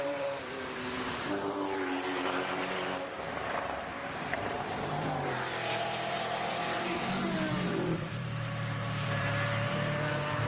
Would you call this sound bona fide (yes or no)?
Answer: no